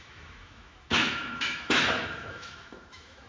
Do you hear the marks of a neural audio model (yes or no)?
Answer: yes